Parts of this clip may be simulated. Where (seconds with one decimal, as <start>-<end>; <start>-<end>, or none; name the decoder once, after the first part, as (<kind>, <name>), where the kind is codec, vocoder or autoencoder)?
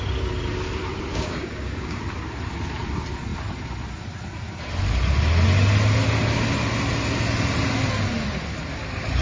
1.1-2.0 (codec, DAC)